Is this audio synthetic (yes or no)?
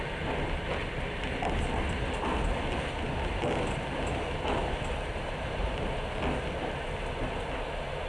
no